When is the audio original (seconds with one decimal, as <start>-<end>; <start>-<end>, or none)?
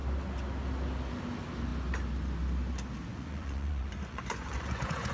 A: 0.0-3.1